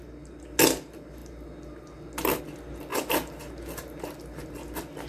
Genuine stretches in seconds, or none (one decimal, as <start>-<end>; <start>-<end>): 0.0-2.9; 3.5-5.1